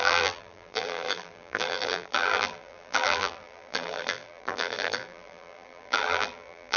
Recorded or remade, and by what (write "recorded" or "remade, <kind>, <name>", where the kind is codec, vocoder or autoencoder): remade, vocoder, BigVGAN v2